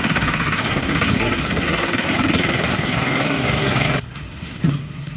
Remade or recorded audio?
remade